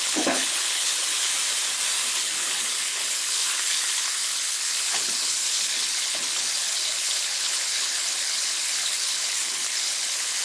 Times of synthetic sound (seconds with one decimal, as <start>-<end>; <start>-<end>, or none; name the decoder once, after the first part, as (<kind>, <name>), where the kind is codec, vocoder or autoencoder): 0.0-1.3 (codec, HILCodec); 2.1-10.4